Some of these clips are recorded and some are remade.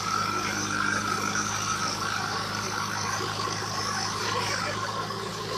remade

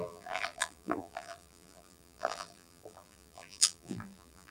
remade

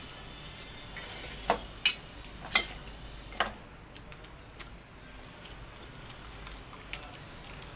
recorded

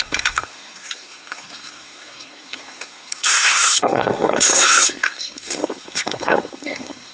remade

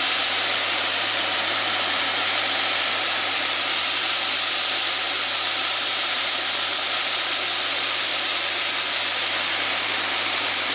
remade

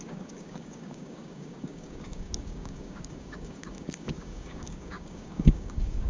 remade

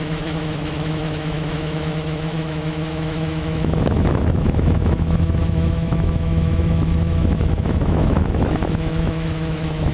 remade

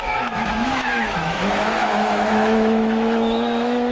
remade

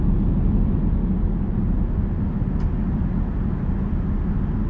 recorded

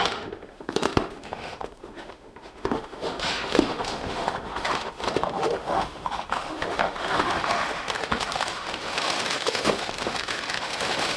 remade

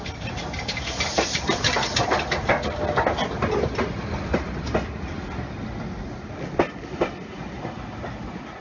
recorded